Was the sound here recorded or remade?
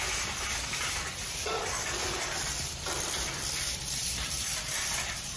remade